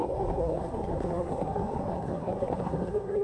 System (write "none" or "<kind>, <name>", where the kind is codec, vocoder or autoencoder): codec, SNAC